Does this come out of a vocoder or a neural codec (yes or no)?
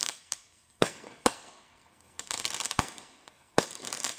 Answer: yes